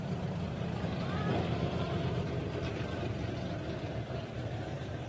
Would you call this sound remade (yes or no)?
yes